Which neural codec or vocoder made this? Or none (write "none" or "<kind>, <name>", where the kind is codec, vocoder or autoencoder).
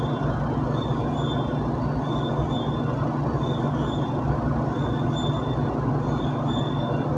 none